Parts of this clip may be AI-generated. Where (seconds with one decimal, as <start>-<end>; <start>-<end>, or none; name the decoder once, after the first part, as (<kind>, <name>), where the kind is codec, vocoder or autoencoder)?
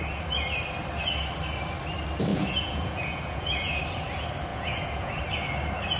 2.3-3.8 (vocoder, Vocos); 4.5-5.2